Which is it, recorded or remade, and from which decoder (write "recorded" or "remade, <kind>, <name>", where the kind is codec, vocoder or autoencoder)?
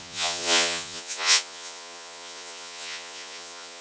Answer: remade, vocoder, Vocos